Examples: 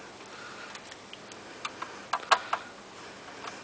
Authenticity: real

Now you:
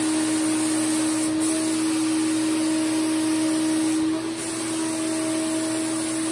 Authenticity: real